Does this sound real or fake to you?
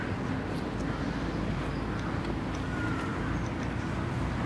real